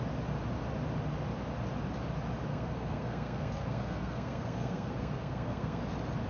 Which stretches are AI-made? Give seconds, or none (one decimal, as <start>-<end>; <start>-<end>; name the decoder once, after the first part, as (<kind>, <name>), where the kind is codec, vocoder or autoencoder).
2.5-5.8 (codec, SNAC)